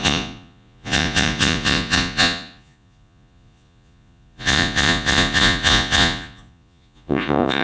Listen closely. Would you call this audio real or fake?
fake